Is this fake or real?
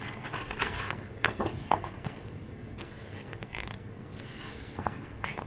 fake